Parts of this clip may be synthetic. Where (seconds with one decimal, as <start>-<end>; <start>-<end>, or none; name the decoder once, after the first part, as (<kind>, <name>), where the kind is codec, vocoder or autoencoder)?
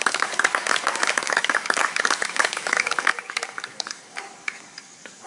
0.0-5.3 (codec, DAC)